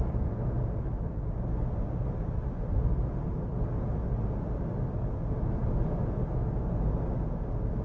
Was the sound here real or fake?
real